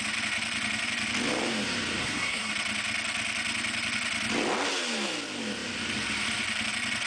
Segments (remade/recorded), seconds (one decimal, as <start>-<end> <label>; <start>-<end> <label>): 0.0-2.0 recorded; 2.0-2.5 remade; 2.5-7.1 recorded